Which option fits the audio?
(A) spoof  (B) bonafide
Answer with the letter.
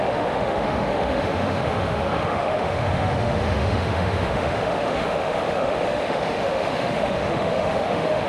A